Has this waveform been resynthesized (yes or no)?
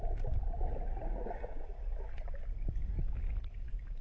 no